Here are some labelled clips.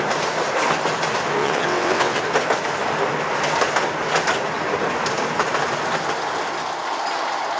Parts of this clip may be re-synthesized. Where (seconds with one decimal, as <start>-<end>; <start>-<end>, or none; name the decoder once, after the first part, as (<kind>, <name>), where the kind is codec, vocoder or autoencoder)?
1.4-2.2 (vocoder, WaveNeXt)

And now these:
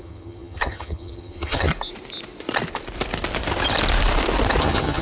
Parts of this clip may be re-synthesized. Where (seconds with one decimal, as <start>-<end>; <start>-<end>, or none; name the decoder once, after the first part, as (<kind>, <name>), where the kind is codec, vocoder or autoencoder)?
0.0-1.7 (vocoder, HiFi-GAN); 4.6-5.0

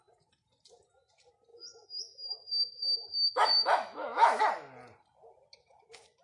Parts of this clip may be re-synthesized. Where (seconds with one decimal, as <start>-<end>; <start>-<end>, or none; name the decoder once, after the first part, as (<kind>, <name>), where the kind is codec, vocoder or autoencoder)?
1.5-4.4 (autoencoder, DAC-VAE)